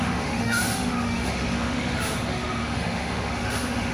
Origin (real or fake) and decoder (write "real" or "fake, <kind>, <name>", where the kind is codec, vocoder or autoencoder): fake, autoencoder, DAC-VAE